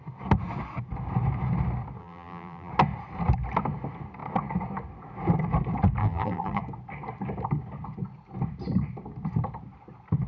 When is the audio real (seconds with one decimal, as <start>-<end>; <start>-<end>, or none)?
0.0-2.0; 2.7-6.0; 6.6-10.3